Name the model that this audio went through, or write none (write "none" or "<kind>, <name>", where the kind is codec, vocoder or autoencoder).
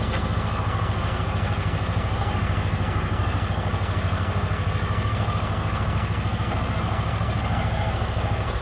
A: codec, SNAC